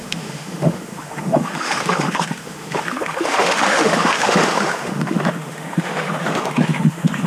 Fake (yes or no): yes